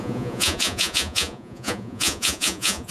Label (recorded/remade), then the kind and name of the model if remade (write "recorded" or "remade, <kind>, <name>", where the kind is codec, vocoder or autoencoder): remade, vocoder, Vocos